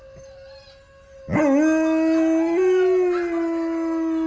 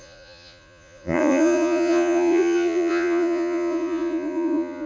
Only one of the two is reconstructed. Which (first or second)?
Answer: second